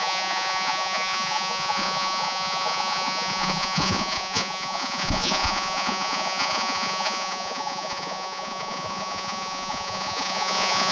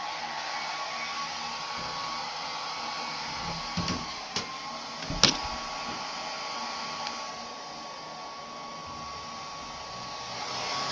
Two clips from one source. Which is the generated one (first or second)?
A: first